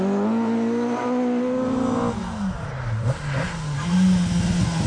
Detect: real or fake real